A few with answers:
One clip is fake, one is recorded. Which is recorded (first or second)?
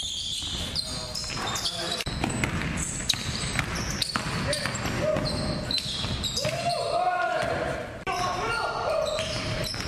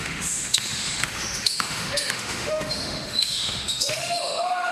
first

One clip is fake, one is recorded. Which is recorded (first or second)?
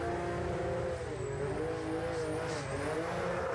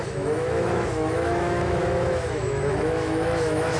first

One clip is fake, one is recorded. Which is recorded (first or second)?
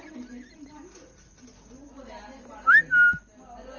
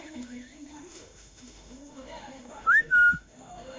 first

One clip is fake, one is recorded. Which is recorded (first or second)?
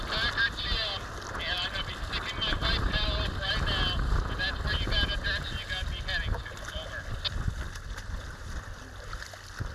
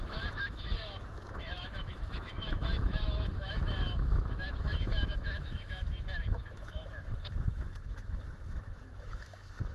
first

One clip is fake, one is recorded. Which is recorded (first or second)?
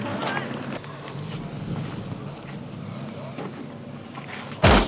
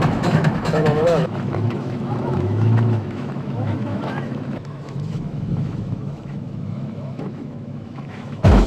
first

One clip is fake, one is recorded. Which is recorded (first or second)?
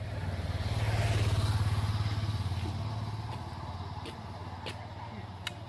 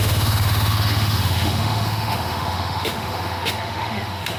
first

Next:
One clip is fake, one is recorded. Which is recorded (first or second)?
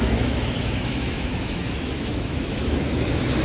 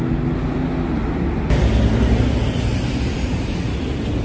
second